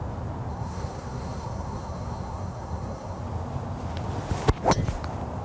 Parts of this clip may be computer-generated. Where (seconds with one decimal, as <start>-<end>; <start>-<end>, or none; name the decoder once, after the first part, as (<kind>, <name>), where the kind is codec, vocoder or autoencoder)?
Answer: 0.5-3.2 (codec, SNAC)